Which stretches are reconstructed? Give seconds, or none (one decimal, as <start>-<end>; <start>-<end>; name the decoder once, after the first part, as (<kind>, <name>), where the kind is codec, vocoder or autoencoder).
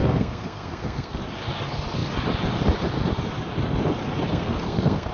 0.0-1.2 (codec, SNAC); 4.3-5.1